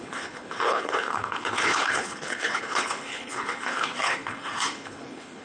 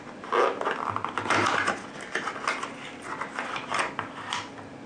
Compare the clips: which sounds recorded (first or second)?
second